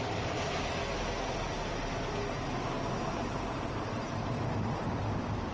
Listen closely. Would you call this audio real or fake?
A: real